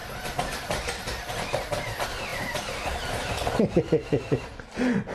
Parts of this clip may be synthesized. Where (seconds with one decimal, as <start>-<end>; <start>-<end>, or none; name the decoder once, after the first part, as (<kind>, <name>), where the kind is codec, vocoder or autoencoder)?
2.3-3.7 (vocoder, BigVGAN v2)